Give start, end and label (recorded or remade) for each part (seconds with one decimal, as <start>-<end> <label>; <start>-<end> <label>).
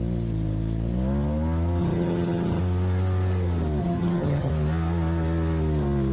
0.0-1.8 recorded; 1.8-2.6 remade; 2.6-3.8 recorded; 3.8-4.5 remade; 4.5-6.1 recorded